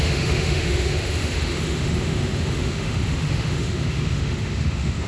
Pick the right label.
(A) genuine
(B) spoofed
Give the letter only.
B